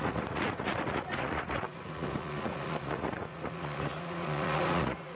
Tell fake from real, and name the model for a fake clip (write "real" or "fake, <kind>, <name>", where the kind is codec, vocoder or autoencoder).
fake, vocoder, Vocos